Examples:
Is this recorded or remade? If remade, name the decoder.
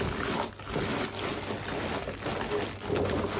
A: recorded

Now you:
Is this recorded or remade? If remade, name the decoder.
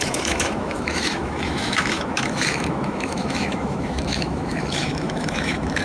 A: remade, autoencoder, DAC-VAE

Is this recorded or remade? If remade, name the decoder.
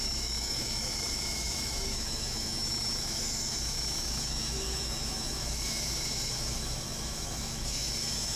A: remade, autoencoder, DAC-VAE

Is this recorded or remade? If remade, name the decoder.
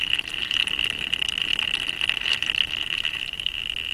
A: recorded